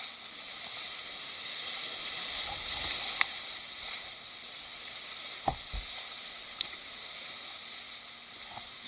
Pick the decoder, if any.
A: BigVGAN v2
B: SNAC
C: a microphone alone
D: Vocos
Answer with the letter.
C